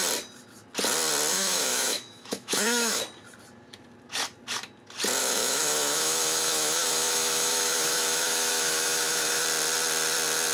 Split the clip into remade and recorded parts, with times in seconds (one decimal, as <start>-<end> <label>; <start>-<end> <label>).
0.0-1.3 recorded; 1.3-3.0 remade; 3.0-5.2 recorded; 5.2-9.4 remade; 9.4-10.5 recorded